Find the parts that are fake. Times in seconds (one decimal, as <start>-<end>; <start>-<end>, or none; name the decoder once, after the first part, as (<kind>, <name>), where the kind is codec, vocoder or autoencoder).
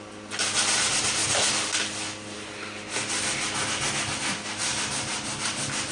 none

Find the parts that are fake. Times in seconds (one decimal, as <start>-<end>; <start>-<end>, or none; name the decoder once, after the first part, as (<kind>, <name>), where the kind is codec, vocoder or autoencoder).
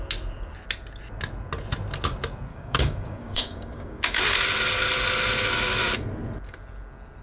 2.5-4.2 (codec, DAC)